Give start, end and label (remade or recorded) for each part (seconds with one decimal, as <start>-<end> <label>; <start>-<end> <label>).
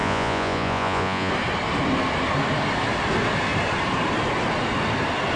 0.0-1.3 remade; 1.3-5.4 recorded